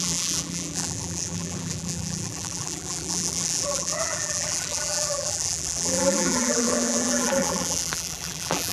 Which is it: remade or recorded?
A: remade